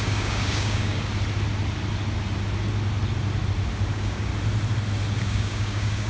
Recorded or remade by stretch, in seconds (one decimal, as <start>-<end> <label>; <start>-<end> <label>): 0.0-1.1 remade; 1.1-3.9 recorded; 3.9-4.3 remade; 4.3-5.2 recorded; 5.2-6.1 remade